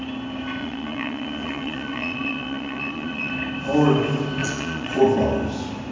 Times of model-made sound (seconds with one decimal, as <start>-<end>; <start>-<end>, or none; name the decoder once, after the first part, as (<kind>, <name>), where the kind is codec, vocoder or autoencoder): 0.6-3.3 (vocoder, Vocos); 4.4-5.0